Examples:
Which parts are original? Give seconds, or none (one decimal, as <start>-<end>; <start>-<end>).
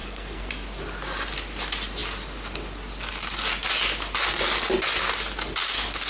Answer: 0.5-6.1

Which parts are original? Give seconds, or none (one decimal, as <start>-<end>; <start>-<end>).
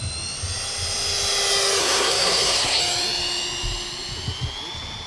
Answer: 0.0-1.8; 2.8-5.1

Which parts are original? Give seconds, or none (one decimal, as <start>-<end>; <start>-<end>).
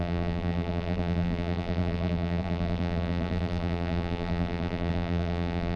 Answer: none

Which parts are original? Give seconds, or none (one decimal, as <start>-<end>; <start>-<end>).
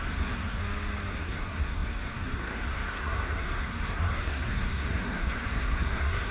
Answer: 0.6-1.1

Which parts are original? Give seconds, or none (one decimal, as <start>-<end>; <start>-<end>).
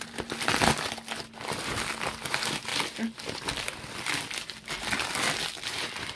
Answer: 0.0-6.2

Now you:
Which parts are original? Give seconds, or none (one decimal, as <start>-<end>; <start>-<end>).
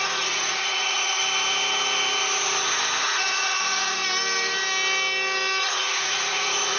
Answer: 1.2-3.0; 4.0-5.6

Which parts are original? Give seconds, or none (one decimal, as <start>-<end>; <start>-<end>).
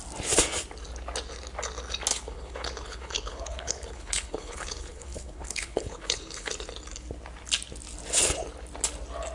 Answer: 0.0-2.1; 6.5-9.3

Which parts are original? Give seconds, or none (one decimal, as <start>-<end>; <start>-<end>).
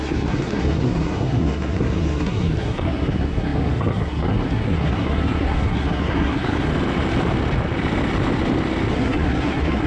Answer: 6.7-8.9